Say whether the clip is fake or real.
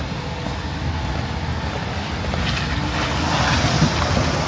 real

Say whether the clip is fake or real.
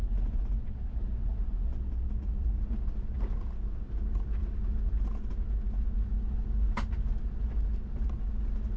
real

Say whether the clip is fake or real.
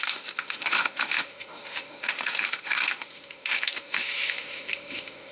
fake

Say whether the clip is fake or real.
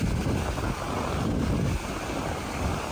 real